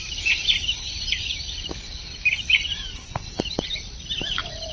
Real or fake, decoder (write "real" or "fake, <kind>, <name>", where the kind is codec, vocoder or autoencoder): fake, vocoder, BigVGAN v2